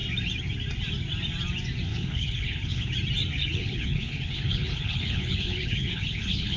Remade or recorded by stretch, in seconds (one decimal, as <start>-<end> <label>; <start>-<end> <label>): 0.0-1.9 recorded; 1.9-2.9 remade; 2.9-3.4 recorded; 3.4-6.6 remade